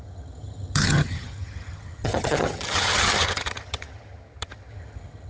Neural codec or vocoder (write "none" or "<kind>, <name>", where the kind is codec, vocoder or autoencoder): vocoder, HiFi-GAN